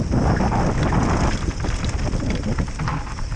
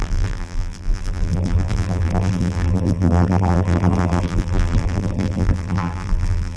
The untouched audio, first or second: first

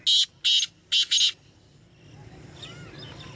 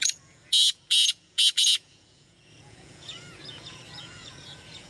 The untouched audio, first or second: first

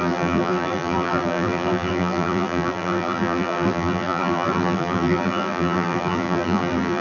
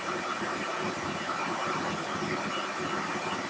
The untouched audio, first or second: second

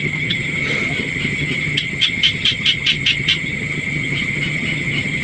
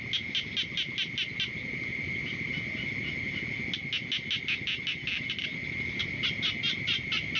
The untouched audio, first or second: second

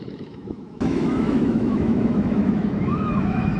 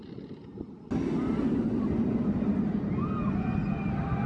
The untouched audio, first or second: second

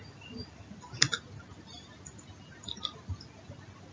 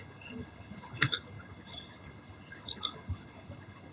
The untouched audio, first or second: first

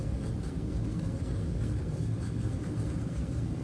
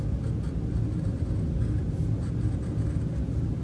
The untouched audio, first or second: second